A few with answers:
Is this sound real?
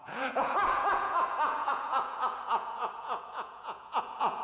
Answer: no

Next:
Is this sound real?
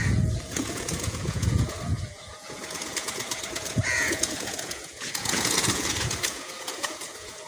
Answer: no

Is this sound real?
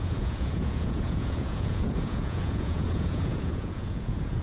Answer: no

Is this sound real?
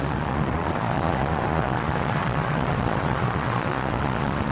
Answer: no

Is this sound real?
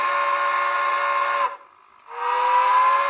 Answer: yes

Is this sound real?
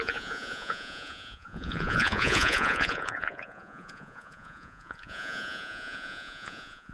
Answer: no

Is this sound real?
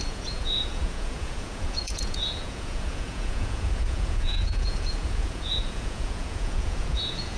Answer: no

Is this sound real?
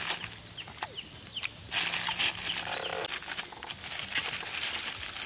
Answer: yes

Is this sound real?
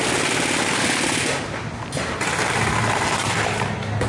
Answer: yes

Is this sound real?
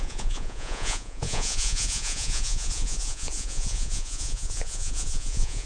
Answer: no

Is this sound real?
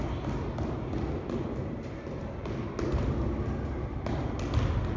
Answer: yes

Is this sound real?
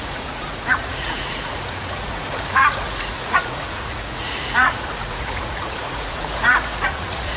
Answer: no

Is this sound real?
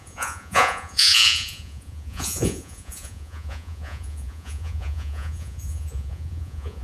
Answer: no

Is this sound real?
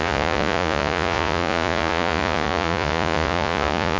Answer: no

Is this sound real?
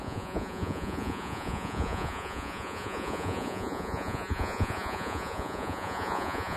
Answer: no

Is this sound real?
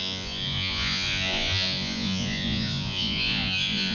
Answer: no